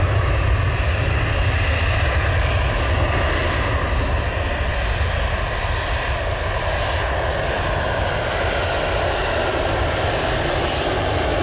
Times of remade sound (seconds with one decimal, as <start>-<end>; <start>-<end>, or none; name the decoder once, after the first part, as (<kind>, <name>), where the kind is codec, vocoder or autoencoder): none